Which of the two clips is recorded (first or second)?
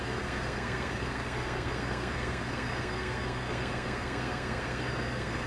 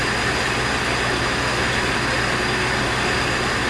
second